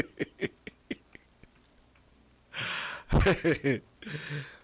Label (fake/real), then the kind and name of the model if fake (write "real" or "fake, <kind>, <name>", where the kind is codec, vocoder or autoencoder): real